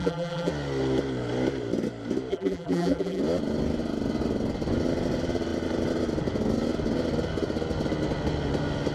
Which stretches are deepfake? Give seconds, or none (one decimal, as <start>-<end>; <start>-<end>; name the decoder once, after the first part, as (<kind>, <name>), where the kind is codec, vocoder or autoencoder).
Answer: 0.0-0.5 (vocoder, BigVGAN v2); 2.3-3.2